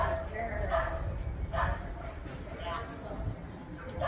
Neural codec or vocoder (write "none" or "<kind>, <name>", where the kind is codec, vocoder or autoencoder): none